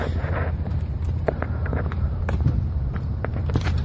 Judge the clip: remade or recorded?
remade